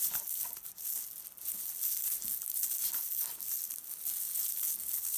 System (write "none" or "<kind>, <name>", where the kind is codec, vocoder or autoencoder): none